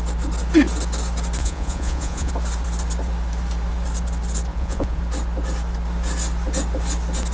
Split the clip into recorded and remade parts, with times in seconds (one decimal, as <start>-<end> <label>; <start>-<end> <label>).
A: 0.0-1.4 recorded; 1.4-2.3 remade; 2.3-4.5 recorded; 4.5-5.0 remade; 5.0-7.3 recorded